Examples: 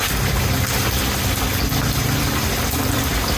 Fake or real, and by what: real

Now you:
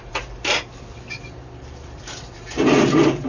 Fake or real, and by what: fake, vocoder, BigVGAN v2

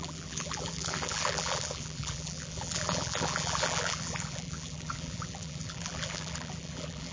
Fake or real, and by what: fake, vocoder, BigVGAN v2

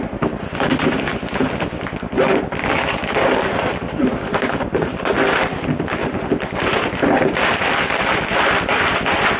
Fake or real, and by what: fake, vocoder, BigVGAN v2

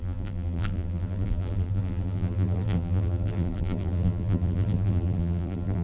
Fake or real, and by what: fake, vocoder, BigVGAN v2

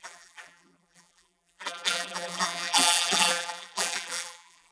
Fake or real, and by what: fake, vocoder, BigVGAN v2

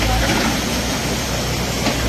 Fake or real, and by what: fake, vocoder, BigVGAN v2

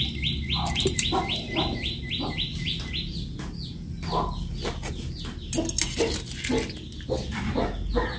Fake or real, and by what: real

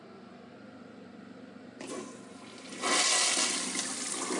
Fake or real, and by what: real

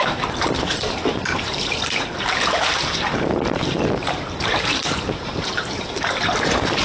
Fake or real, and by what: fake, vocoder, BigVGAN v2